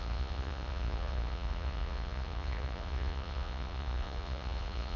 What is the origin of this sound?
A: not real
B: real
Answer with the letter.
A